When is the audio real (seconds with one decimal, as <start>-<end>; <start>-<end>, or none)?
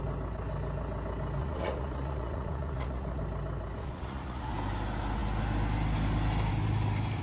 0.0-1.4; 3.2-3.8; 4.5-7.2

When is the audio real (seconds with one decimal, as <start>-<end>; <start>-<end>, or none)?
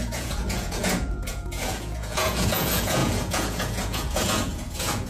none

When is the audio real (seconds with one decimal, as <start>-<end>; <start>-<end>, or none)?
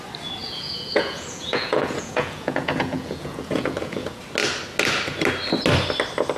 0.0-0.4; 4.2-6.4